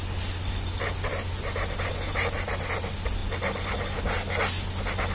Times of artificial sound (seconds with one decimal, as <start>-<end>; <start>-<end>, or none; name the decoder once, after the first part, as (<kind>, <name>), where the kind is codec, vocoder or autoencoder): none